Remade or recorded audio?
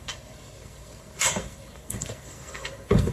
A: remade